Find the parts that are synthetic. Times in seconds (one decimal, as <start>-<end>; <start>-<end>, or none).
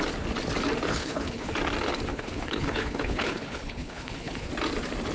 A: 0.9-1.5; 2.1-4.5